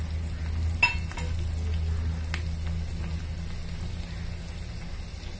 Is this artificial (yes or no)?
no